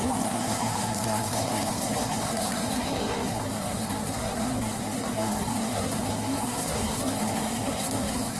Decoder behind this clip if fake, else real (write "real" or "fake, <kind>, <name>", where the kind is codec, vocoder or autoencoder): fake, codec, SNAC